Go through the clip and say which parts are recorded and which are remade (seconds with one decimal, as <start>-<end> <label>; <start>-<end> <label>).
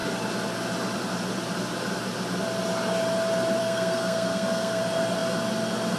0.0-3.6 recorded; 3.6-4.8 remade; 4.8-6.0 recorded